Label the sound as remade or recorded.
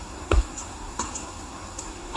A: remade